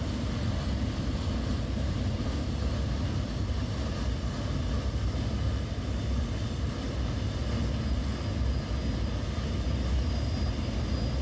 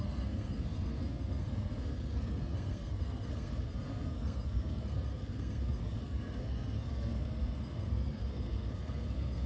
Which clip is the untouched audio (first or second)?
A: first